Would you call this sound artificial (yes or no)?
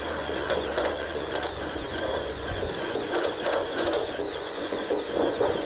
yes